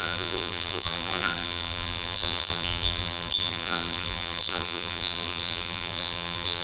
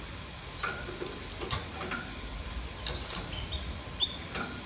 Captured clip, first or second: second